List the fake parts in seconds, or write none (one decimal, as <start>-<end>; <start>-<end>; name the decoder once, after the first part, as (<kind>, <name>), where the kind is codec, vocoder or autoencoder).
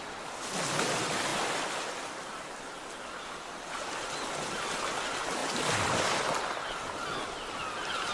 none